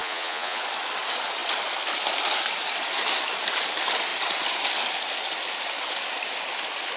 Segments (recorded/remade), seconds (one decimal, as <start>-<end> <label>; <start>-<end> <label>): 0.0-0.6 remade; 0.6-7.0 recorded